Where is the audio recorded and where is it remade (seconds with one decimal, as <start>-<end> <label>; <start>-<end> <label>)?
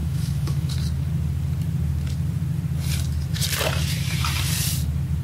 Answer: 0.0-0.7 remade; 0.7-5.2 recorded